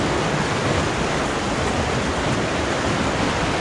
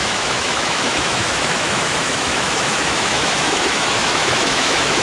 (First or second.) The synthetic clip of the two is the second